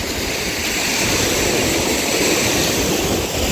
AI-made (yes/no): yes